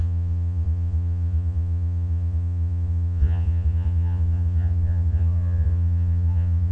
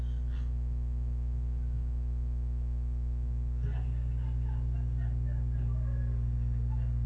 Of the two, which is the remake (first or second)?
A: first